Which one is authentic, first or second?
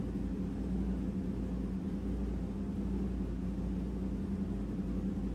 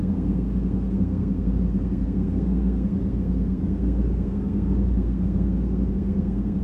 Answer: first